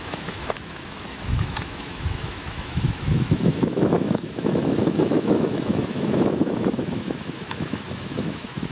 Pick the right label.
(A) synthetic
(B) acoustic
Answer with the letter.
A